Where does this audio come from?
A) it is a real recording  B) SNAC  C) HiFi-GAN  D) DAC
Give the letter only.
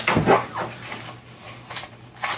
A